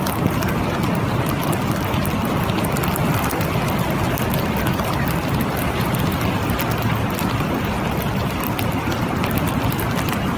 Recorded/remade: recorded